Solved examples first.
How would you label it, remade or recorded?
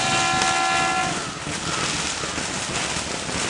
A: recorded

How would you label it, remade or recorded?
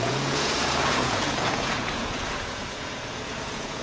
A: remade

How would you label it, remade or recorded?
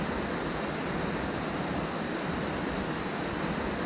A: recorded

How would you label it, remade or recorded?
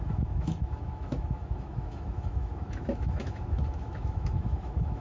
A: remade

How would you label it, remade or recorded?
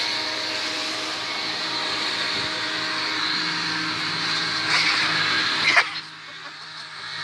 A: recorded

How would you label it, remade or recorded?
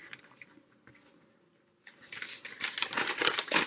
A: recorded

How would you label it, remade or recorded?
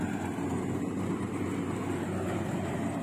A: recorded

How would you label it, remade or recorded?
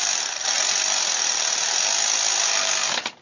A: recorded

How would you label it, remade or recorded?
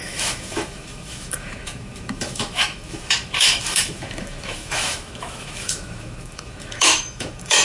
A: remade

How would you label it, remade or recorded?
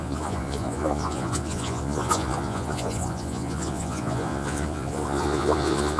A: remade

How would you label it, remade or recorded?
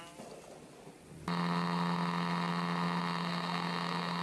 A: recorded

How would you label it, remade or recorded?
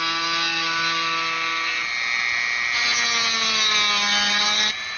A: recorded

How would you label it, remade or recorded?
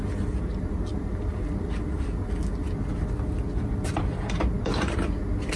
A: recorded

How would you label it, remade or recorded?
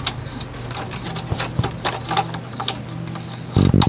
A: recorded